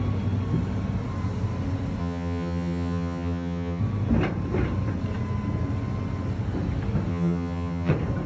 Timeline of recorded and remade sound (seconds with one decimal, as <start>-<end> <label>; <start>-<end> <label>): 0.0-2.0 recorded; 2.0-3.8 remade; 3.8-7.1 recorded; 7.1-7.9 remade; 7.9-8.3 recorded